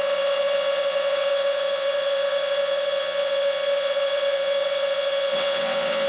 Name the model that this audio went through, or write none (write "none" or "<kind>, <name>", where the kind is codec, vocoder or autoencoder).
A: vocoder, WaveNeXt